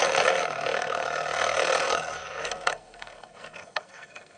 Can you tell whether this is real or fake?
fake